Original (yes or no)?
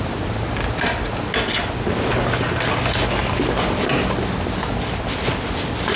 yes